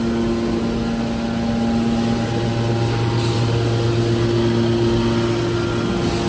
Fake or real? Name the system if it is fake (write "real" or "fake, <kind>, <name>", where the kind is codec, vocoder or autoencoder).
real